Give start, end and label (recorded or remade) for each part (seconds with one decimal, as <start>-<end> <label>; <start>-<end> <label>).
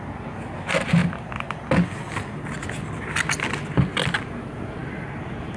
0.0-4.8 recorded; 4.8-5.6 remade